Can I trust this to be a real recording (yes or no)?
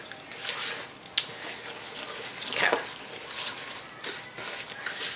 yes